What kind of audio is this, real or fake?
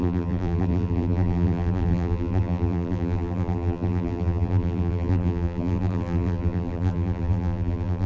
fake